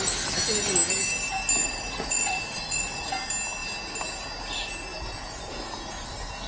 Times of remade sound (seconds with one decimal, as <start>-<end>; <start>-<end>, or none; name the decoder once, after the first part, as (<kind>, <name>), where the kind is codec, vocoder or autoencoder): 1.6-3.1 (vocoder, Vocos)